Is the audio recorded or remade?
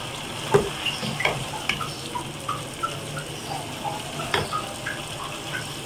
recorded